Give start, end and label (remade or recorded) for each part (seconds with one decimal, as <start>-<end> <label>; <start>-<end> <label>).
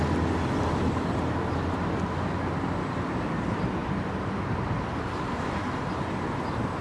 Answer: 0.0-3.8 recorded; 3.8-5.1 remade; 5.1-6.8 recorded